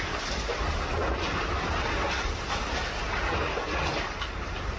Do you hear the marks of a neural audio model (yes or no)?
no